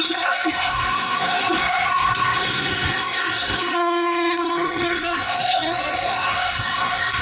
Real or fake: fake